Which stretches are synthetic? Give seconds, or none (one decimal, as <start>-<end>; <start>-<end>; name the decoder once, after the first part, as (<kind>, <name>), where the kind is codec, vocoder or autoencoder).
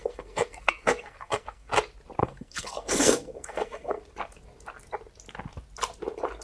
0.0-1.7 (codec, SNAC); 2.2-4.0